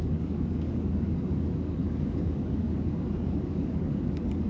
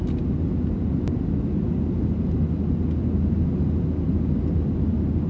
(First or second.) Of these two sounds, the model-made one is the first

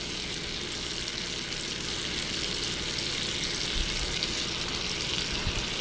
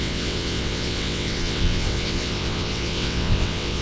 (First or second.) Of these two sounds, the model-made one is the second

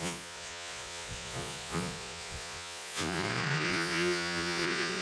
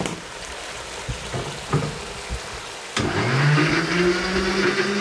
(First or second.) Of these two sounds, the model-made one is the first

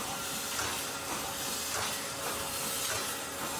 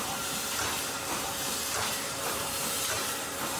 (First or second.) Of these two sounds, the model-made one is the second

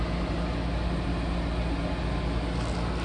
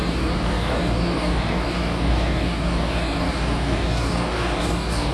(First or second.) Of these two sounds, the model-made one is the second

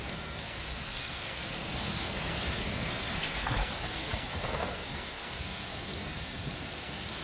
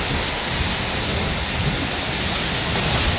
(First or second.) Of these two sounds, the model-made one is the first